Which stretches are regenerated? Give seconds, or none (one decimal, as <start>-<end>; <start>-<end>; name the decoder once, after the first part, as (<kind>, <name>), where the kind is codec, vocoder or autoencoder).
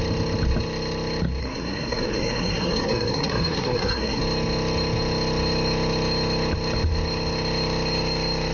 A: 1.4-4.2 (codec, SNAC)